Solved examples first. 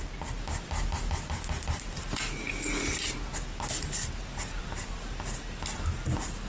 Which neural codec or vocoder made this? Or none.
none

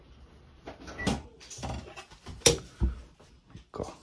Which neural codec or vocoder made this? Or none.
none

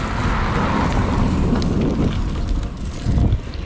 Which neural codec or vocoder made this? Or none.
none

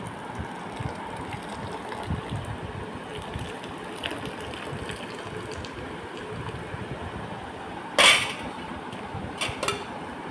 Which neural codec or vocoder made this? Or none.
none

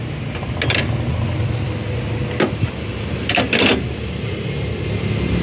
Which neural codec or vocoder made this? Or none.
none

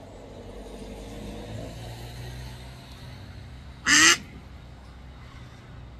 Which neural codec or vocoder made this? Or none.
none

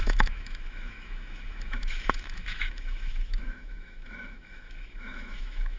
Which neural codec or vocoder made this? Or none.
autoencoder, DAC-VAE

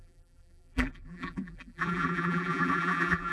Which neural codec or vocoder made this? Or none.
vocoder, BigVGAN v2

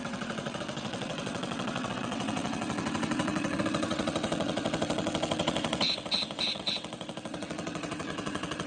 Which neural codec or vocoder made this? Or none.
vocoder, WaveNeXt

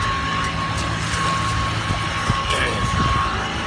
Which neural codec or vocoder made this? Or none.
none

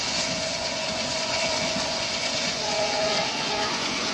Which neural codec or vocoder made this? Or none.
vocoder, Vocos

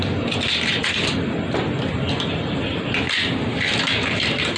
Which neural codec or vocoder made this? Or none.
none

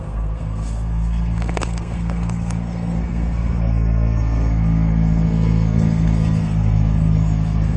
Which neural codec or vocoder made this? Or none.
codec, SNAC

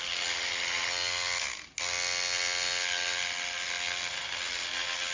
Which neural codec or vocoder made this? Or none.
none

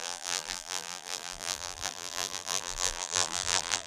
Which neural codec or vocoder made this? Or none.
vocoder, BigVGAN v2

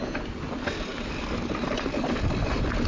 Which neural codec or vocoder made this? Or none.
none